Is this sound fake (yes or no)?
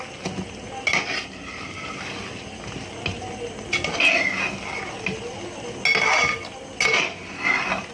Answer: no